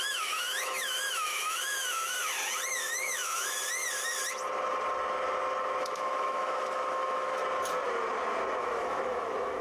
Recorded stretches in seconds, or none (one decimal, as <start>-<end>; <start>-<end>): 2.2-2.7; 3.6-5.8; 7.4-8.6